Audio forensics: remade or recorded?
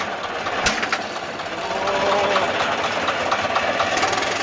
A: recorded